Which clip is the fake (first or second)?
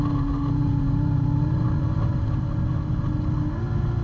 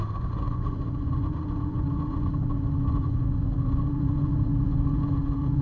second